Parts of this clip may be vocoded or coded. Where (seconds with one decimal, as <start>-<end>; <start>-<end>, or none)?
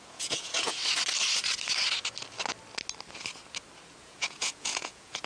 0.0-0.8; 4.0-5.3